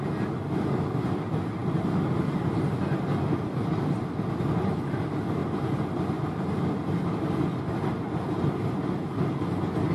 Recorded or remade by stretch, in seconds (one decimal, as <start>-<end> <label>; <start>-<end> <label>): 0.0-9.9 recorded